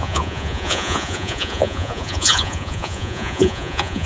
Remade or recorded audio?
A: remade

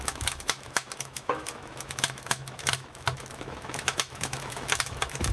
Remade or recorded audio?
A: remade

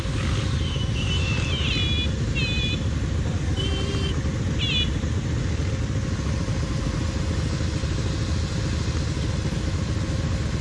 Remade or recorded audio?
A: recorded